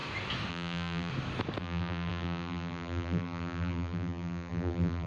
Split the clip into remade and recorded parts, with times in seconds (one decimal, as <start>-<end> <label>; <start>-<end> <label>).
0.0-0.5 recorded; 0.5-1.1 remade; 1.1-1.6 recorded; 1.6-5.1 remade